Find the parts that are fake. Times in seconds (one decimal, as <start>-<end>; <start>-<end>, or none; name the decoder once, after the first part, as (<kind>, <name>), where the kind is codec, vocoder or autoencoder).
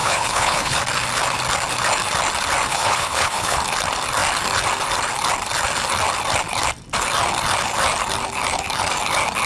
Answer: 0.0-0.8 (codec, HILCodec); 2.7-3.6